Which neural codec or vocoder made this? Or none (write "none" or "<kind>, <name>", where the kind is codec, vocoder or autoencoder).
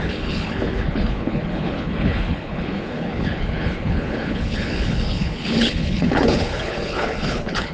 codec, HILCodec